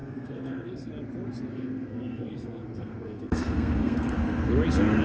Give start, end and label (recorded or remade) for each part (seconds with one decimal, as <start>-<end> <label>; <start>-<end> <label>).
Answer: 0.0-0.9 remade; 0.9-1.5 recorded; 1.5-4.5 remade; 4.5-5.0 recorded